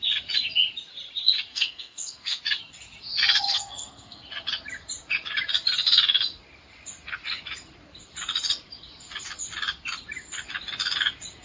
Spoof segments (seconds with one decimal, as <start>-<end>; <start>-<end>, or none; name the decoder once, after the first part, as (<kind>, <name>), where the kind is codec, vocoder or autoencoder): 1.5-2.4 (codec, SNAC); 3.5-4.2